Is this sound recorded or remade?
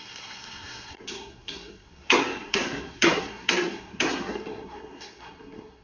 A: remade